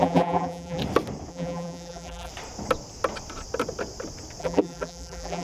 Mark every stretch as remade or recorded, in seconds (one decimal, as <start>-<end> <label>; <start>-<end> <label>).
0.0-0.8 remade; 0.8-1.3 recorded; 1.3-2.3 remade; 2.3-4.4 recorded; 4.4-5.4 remade

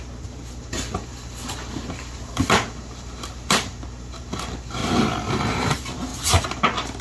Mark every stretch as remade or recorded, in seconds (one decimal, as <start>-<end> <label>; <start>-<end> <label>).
0.0-4.8 remade; 4.8-5.3 recorded; 5.3-7.0 remade

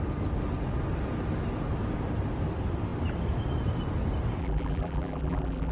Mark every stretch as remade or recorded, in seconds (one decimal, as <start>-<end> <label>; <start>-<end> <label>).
0.0-4.4 recorded; 4.4-5.7 remade